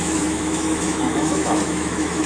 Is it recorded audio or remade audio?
remade